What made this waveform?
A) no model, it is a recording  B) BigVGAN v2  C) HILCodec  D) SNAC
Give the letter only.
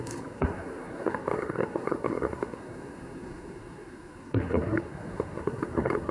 D